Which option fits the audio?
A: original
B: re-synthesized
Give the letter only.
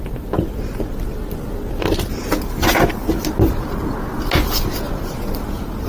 A